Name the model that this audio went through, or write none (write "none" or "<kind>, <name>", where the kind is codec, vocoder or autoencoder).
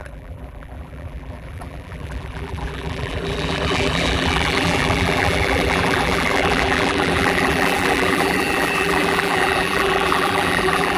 vocoder, BigVGAN v2